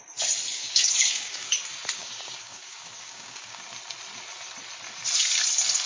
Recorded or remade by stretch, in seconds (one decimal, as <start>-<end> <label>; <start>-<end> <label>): 0.0-0.5 recorded; 0.5-1.6 remade; 1.6-2.0 recorded; 2.0-3.6 remade; 3.6-5.9 recorded